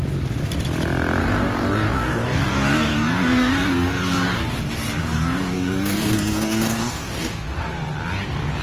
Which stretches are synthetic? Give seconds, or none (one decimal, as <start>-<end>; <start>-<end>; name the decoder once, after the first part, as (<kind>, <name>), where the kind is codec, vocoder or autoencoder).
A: 1.2-4.6 (codec, DAC); 5.0-7.7